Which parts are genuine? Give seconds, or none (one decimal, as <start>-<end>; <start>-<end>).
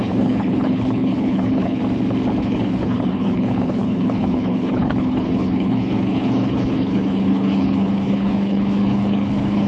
1.8-2.4